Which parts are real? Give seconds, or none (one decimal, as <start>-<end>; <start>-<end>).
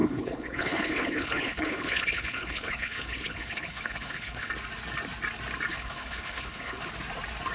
4.5-5.7; 6.9-7.5